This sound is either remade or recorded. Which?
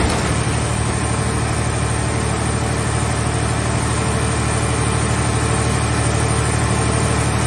recorded